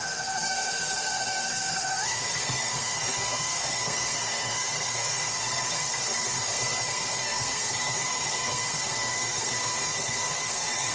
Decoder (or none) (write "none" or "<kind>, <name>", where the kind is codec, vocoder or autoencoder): codec, SNAC